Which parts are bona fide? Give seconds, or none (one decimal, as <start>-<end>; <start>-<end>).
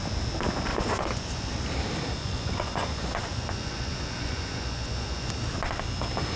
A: 0.0-0.7; 1.5-2.2; 5.3-6.4